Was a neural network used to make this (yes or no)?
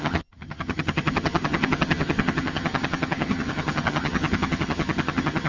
yes